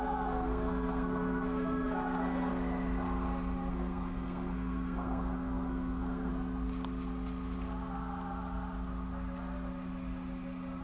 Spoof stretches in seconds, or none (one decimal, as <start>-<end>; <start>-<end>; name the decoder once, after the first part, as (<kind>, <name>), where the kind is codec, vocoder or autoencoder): 0.0-2.5 (codec, SNAC); 3.7-6.3

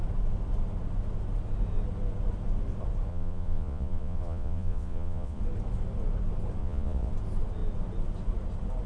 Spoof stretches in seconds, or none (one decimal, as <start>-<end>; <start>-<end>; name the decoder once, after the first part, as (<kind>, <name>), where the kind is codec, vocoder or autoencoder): 3.1-5.4 (vocoder, Vocos); 6.6-7.1